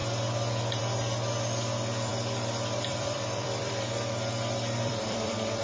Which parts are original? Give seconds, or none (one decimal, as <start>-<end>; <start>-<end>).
0.0-2.1